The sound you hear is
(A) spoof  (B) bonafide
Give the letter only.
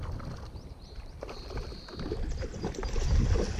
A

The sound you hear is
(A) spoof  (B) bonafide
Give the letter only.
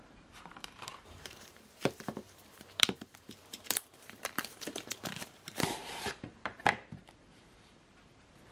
A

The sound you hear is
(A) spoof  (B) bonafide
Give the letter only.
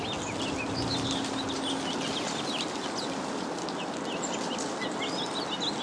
B